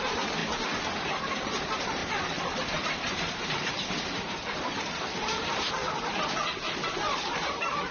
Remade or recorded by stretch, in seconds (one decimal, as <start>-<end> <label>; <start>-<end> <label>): 0.0-0.4 remade; 0.4-1.0 recorded; 1.0-5.8 remade; 5.8-7.1 recorded; 7.1-7.9 remade